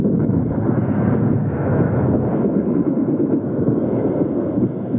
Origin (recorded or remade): remade